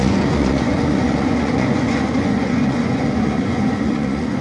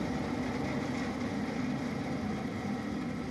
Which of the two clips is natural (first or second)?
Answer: second